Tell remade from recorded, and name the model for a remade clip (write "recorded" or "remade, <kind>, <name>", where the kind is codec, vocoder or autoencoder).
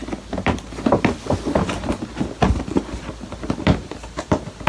recorded